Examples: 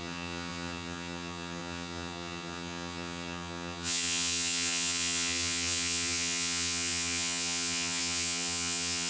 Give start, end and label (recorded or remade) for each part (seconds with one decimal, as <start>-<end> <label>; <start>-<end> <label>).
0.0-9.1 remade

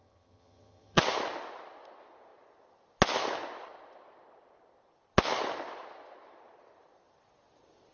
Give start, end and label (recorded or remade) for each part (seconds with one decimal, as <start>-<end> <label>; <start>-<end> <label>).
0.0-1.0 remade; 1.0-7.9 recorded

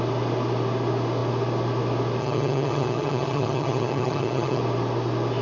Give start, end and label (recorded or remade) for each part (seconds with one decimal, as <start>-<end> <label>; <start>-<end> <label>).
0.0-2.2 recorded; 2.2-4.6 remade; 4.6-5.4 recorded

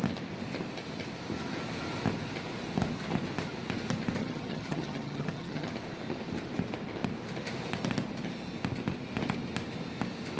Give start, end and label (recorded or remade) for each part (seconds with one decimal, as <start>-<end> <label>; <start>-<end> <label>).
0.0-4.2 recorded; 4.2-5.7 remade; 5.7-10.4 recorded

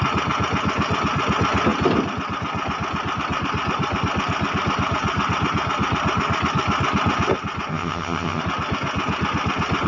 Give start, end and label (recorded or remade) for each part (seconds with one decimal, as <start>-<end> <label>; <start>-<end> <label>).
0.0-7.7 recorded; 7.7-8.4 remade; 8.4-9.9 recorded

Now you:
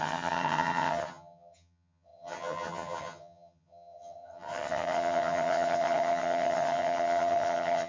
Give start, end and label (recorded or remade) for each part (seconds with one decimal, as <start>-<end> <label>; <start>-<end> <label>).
0.0-7.9 remade